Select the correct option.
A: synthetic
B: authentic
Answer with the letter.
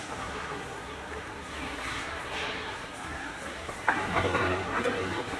A